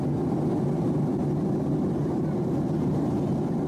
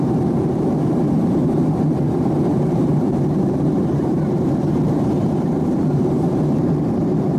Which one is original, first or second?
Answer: first